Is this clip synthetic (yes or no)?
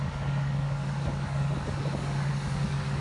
yes